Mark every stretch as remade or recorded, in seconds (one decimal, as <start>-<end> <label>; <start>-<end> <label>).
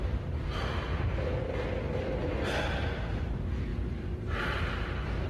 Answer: 0.0-1.1 remade; 1.1-2.2 recorded; 2.2-3.7 remade; 3.7-4.2 recorded; 4.2-5.3 remade